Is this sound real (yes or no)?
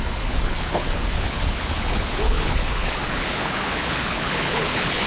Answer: no